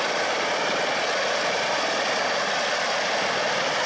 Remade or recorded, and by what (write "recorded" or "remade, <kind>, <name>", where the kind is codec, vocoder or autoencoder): recorded